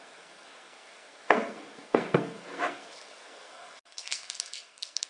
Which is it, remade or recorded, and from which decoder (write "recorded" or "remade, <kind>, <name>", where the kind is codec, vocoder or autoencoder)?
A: remade, codec, SNAC